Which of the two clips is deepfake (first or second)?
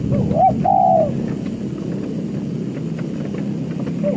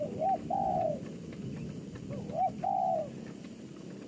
second